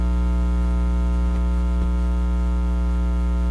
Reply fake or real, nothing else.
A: real